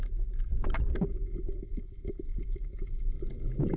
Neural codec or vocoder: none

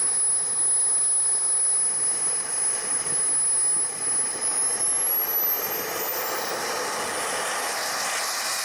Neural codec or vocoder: none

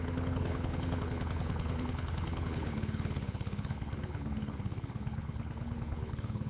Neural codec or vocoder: codec, HILCodec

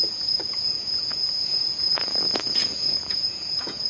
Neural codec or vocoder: vocoder, Vocos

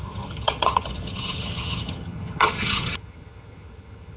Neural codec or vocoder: vocoder, HiFi-GAN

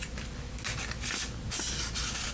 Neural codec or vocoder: none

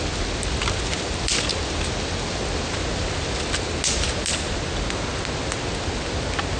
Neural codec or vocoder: none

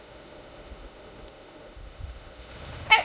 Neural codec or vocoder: autoencoder, DAC-VAE